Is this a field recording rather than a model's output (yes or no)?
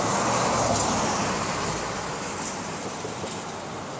yes